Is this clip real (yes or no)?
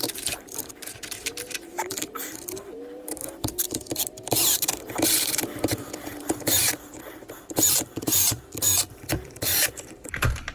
no